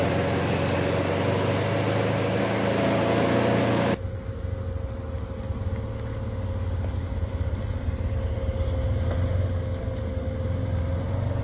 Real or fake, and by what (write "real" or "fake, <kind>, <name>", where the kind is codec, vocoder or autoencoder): real